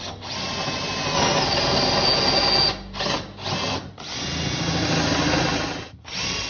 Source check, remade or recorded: recorded